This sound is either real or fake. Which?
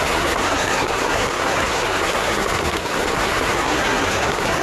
fake